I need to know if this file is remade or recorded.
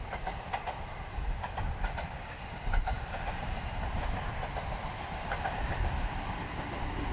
recorded